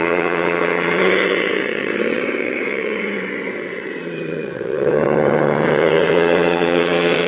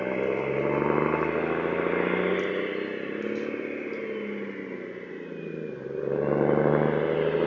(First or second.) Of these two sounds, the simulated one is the first